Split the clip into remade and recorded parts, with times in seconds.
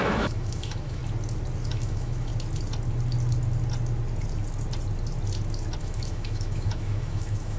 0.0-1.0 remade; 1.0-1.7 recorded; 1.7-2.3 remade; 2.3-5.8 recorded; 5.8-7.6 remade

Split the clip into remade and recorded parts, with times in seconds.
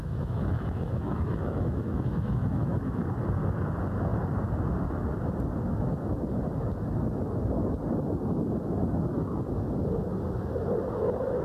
0.0-3.0 remade; 3.0-11.4 recorded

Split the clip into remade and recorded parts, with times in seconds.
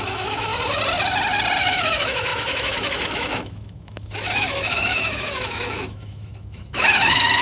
0.0-0.5 remade; 0.5-1.6 recorded; 1.6-7.4 remade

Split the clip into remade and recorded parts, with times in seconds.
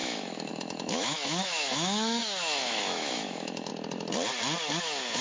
0.0-3.7 remade; 3.7-4.8 recorded; 4.8-5.2 remade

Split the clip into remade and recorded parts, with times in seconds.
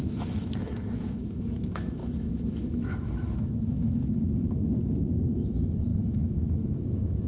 0.0-7.3 remade